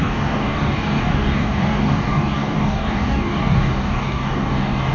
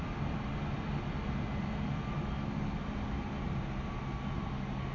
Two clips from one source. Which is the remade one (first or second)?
first